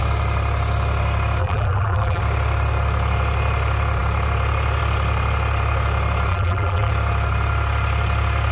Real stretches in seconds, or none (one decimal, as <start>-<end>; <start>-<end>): 0.0-1.4; 2.2-6.3; 6.9-8.5